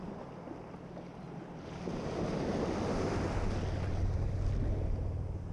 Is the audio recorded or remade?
recorded